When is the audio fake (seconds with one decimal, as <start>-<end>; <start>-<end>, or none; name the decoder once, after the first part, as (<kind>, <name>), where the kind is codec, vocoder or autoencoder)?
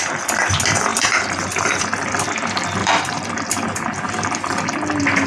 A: 0.9-1.8 (vocoder, BigVGAN v2); 2.8-3.3